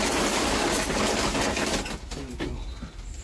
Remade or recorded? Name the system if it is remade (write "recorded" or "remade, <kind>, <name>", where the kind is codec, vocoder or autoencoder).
recorded